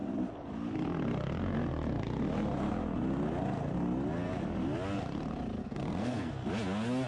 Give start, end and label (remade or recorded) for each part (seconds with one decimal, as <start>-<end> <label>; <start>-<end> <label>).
0.0-5.6 recorded; 5.6-6.3 remade; 6.3-7.1 recorded